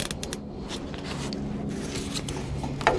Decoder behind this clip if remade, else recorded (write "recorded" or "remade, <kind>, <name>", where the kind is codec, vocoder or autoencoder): recorded